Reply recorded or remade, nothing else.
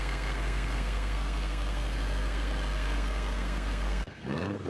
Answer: remade